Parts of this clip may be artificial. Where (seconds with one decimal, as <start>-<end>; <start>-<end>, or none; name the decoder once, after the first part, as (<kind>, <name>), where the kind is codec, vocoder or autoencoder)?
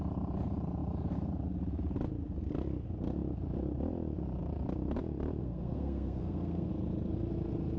5.4-6.7 (codec, SNAC)